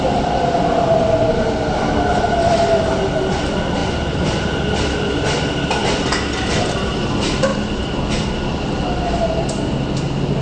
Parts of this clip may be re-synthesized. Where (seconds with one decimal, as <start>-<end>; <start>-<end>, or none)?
none